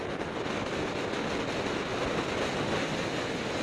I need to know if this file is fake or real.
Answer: real